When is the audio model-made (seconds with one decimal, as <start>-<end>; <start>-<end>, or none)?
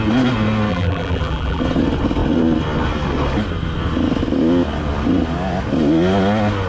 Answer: 0.7-1.6